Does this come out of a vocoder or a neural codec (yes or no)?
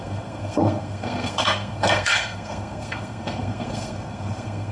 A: yes